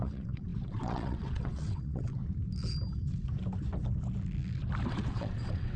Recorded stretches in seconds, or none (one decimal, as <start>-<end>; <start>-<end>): 2.2-4.9